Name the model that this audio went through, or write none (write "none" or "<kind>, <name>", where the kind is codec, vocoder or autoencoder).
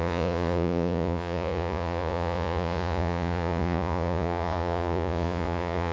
vocoder, Vocos